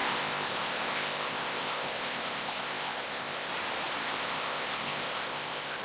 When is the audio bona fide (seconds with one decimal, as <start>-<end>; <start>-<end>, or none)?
3.5-4.0